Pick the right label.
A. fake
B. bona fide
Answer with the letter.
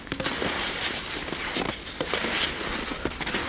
B